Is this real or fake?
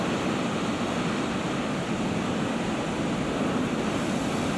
real